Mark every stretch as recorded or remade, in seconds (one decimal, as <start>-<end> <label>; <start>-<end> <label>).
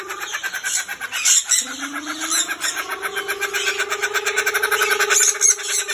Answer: 0.0-5.9 recorded